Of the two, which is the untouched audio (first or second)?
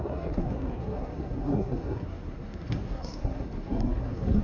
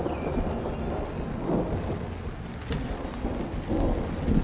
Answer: second